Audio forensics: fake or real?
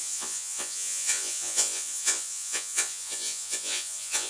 fake